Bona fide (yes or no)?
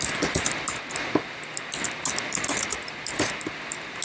yes